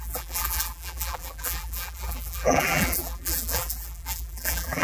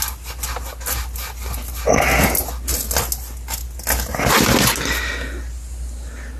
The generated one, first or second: first